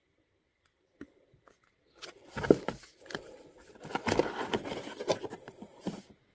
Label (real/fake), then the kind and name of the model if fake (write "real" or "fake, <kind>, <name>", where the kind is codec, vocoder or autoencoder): fake, vocoder, BigVGAN v2